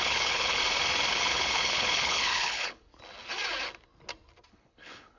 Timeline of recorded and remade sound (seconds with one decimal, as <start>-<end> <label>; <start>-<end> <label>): 0.0-0.6 remade; 0.6-1.1 recorded; 1.1-2.9 remade; 2.9-4.5 recorded; 4.5-5.2 remade